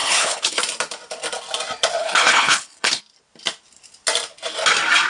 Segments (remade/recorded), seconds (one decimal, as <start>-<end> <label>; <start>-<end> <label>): 0.0-0.6 remade; 0.6-2.0 recorded; 2.0-3.0 remade; 3.0-5.1 recorded